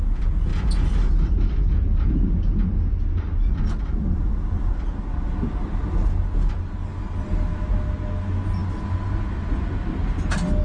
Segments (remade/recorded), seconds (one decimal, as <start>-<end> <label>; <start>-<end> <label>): 0.0-10.6 recorded